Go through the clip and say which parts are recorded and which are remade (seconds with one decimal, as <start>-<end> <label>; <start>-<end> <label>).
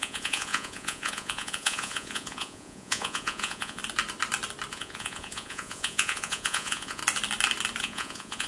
0.0-3.8 remade; 3.8-4.7 recorded; 4.7-7.0 remade; 7.0-7.8 recorded; 7.8-8.5 remade